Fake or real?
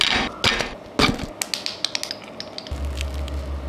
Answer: real